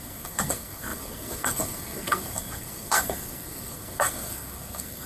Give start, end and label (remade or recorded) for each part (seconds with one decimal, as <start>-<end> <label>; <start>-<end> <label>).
0.0-5.1 remade